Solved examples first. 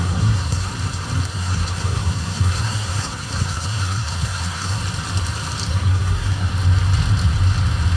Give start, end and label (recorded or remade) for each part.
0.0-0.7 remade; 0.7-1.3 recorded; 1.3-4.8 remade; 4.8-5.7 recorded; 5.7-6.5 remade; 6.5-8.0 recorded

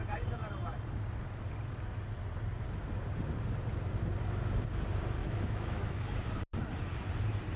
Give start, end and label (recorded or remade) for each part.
0.0-5.2 recorded; 5.2-6.1 remade; 6.1-7.6 recorded

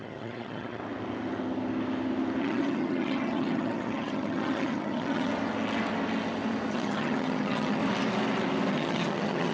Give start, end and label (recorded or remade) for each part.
0.0-0.8 remade; 0.8-2.4 recorded; 2.4-5.3 remade; 5.3-6.7 recorded; 6.7-7.8 remade; 7.8-8.7 recorded; 8.7-9.5 remade

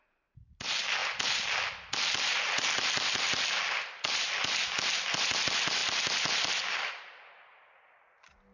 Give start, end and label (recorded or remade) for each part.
0.0-1.0 recorded; 1.0-4.3 remade; 4.3-5.8 recorded; 5.8-6.5 remade; 6.5-8.5 recorded

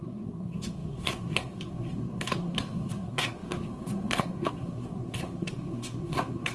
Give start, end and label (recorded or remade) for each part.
0.0-6.5 remade

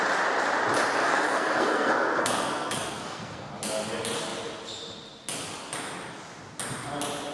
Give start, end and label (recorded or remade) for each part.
0.0-1.0 recorded; 1.0-3.5 remade; 3.5-7.3 recorded

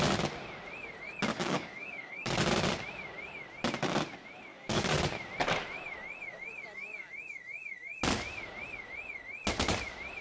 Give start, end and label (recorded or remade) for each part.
0.0-1.3 recorded; 1.3-2.4 remade; 2.4-4.5 recorded; 4.5-5.1 remade; 5.1-10.2 recorded